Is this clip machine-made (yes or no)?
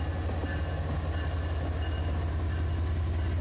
no